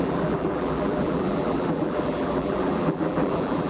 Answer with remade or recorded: remade